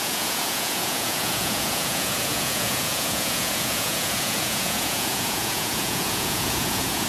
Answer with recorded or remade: remade